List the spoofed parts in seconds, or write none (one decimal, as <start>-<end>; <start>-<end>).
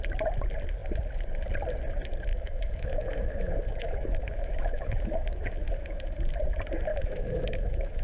2.3-6.2; 6.9-8.0